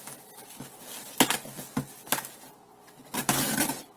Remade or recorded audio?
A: recorded